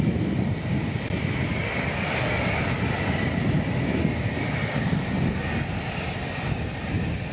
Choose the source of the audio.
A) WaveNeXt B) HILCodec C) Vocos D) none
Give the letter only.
D